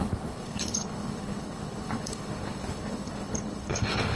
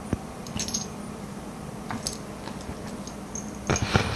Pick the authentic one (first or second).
second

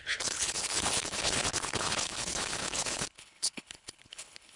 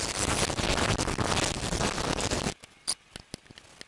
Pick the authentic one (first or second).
second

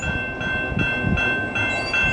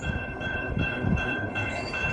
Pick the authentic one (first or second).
first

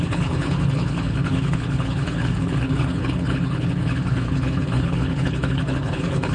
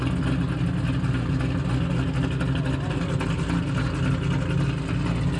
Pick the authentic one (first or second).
second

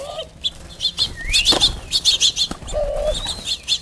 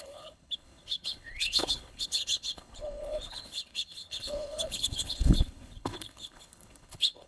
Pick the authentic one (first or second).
first